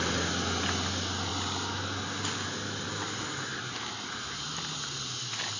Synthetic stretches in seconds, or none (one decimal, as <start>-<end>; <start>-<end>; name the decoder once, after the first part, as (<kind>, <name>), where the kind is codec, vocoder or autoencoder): none